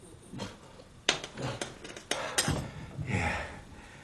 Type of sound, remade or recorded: recorded